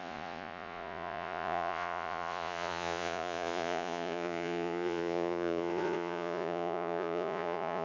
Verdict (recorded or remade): remade